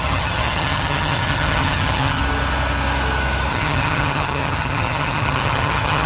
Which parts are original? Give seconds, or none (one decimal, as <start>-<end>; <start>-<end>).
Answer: 2.2-3.5